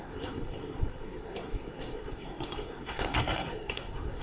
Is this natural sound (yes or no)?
no